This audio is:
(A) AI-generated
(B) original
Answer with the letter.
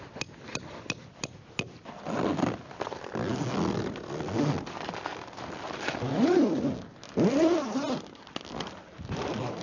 B